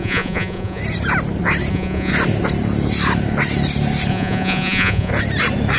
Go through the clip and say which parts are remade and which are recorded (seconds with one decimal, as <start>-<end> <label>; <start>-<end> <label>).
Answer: 0.0-0.8 remade; 0.8-1.7 recorded; 1.7-2.1 remade; 2.1-4.1 recorded; 4.1-5.1 remade; 5.1-5.8 recorded